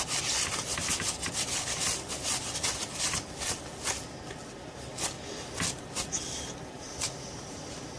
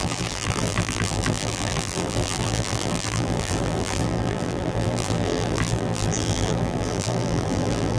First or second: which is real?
first